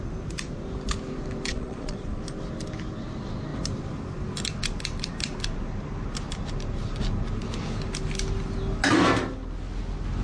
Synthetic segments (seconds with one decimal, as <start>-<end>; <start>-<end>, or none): 1.5-2.2